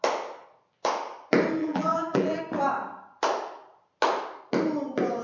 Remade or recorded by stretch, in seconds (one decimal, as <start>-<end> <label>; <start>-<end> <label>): 0.0-1.6 recorded; 1.6-2.4 remade; 2.4-5.2 recorded